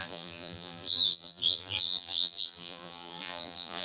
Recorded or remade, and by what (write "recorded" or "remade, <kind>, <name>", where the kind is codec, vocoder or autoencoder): remade, vocoder, BigVGAN v2